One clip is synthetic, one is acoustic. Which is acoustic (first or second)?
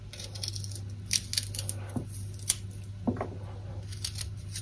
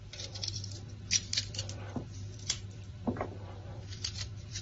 first